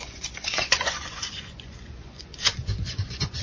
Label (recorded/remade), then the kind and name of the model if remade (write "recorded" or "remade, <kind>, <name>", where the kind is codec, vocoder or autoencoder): remade, vocoder, Vocos